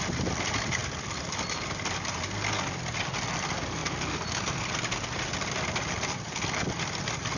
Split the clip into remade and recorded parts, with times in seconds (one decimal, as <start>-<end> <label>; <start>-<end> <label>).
0.0-7.4 recorded